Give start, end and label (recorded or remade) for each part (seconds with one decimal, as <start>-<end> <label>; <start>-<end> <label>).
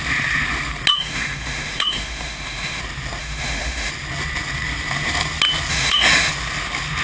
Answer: 0.0-0.9 recorded; 0.9-2.8 remade; 2.8-3.2 recorded; 3.2-3.9 remade; 3.9-5.7 recorded; 5.7-6.3 remade; 6.3-7.0 recorded